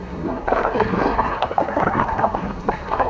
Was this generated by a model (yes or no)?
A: yes